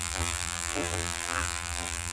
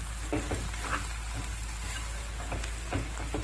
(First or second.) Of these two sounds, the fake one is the first